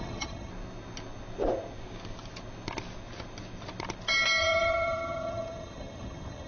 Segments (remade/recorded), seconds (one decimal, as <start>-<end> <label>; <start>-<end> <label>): 0.0-0.5 remade; 0.5-4.4 recorded; 4.4-6.5 remade